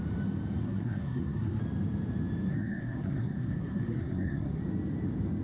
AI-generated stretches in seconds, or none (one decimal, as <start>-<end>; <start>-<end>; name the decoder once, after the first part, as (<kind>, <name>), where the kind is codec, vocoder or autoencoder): 0.6-1.6 (codec, SNAC); 2.5-4.6